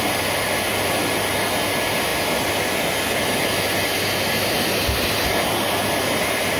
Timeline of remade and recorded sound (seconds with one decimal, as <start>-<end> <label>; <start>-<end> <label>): 0.0-6.6 recorded